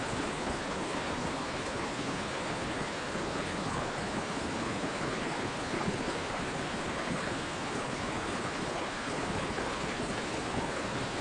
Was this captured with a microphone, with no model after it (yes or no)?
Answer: no